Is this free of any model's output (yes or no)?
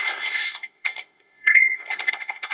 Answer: no